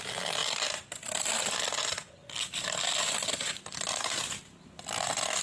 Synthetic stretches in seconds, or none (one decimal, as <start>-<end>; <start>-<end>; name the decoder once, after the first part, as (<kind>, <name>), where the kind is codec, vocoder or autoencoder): none